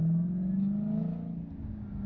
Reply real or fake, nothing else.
real